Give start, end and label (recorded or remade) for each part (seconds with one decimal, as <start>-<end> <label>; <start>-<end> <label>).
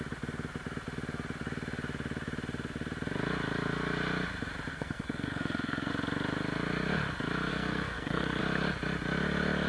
0.0-4.7 recorded; 4.7-5.9 remade; 5.9-7.5 recorded; 7.5-8.4 remade; 8.4-9.7 recorded